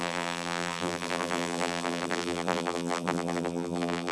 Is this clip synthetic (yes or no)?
yes